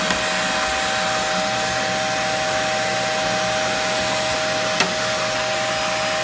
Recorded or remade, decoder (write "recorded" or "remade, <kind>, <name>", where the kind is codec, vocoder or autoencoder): recorded